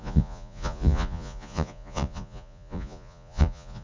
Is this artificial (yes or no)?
yes